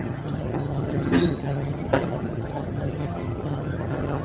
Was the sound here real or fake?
fake